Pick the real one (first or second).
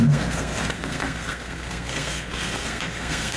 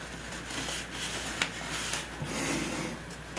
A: second